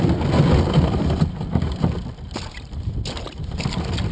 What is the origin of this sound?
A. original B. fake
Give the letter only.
A